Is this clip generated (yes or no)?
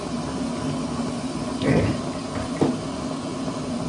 no